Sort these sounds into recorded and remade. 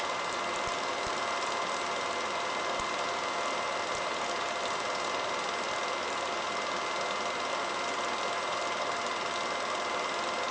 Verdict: recorded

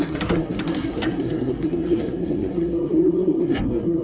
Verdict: remade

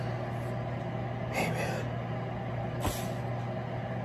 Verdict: recorded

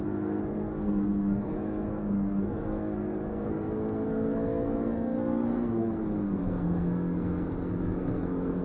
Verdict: remade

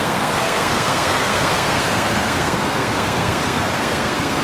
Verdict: remade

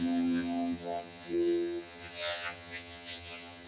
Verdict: remade